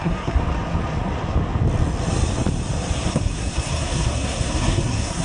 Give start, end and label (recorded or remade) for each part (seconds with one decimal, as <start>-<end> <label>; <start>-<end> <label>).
0.0-0.4 remade; 0.4-3.1 recorded; 3.1-5.2 remade